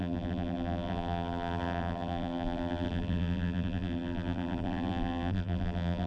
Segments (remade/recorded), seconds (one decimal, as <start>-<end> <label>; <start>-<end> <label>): 0.0-6.1 remade